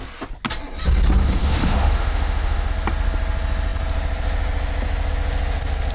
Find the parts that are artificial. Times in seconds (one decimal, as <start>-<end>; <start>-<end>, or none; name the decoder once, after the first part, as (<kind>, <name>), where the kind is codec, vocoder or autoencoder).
1.2-2.7 (autoencoder, DAC-VAE)